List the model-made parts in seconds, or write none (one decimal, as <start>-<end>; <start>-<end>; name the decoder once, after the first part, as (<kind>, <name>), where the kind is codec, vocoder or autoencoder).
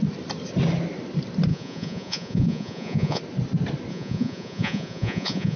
1.5-3.2 (vocoder, Vocos); 3.9-5.6